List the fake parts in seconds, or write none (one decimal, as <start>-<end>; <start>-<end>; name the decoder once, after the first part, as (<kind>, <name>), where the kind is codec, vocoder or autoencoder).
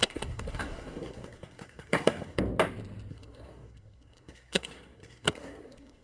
0.0-2.4 (codec, SNAC); 3.1-6.0